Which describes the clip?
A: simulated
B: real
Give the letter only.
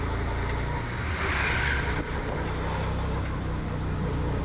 B